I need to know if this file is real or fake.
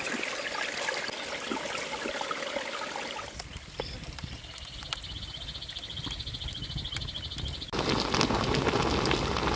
real